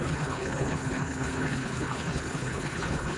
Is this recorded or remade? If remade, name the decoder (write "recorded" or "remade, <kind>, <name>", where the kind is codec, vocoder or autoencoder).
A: remade, codec, HILCodec